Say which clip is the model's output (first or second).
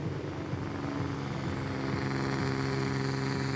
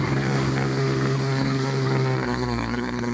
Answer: second